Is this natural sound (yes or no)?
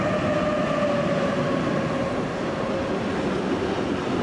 yes